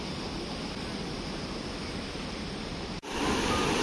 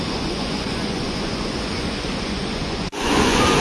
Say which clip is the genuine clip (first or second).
first